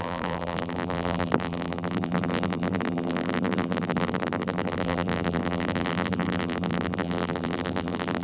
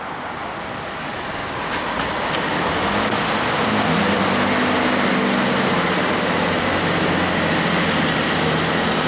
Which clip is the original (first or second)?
second